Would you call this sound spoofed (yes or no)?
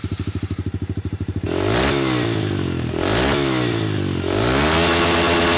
no